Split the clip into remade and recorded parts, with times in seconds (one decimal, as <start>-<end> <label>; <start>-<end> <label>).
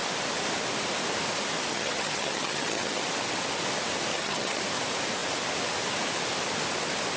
0.0-1.7 recorded; 1.7-3.0 remade; 3.0-4.1 recorded; 4.1-4.6 remade; 4.6-7.2 recorded